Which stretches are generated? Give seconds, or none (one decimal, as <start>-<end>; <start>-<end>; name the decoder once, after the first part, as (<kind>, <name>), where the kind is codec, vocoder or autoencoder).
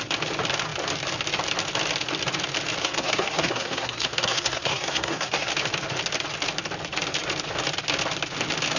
2.8-5.5 (codec, SNAC)